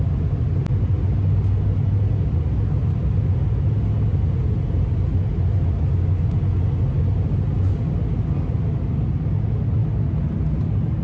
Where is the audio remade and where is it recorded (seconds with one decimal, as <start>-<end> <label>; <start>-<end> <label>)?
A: 0.0-11.0 recorded